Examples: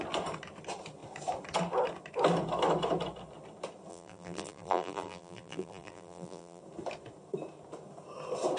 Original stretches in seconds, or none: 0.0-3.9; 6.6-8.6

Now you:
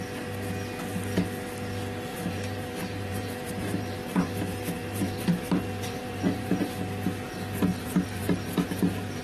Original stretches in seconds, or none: 0.0-2.1; 6.7-7.6; 8.2-9.2

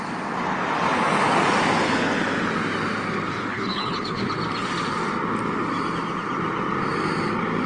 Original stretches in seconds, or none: 0.0-3.5; 4.3-7.7

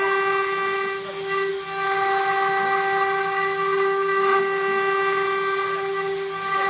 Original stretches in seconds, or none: 0.0-6.7

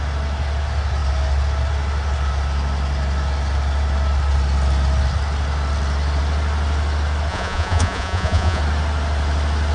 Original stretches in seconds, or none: 0.0-7.3; 8.6-9.7